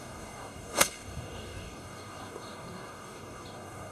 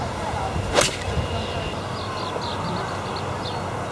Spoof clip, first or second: first